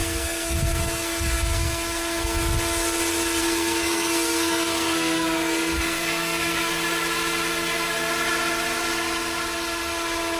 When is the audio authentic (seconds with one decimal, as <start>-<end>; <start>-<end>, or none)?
2.4-3.4; 6.7-10.4